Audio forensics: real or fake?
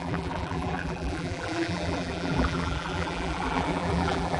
fake